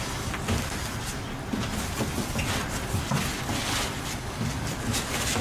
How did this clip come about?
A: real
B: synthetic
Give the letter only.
A